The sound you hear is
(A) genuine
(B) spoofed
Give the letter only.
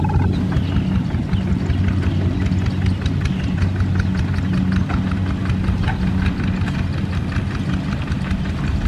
A